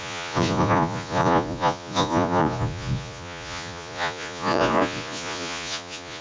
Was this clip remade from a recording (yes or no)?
yes